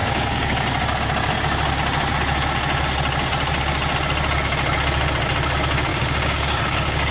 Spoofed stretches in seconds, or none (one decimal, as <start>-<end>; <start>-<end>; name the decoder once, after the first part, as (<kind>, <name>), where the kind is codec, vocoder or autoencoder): 0.0-0.6 (codec, DAC); 5.9-7.1